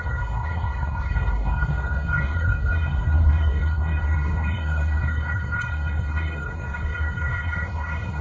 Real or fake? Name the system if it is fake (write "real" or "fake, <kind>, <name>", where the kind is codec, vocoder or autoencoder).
fake, codec, SNAC